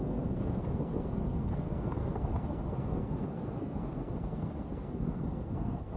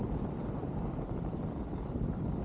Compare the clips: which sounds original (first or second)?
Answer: second